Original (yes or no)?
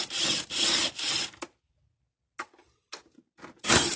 yes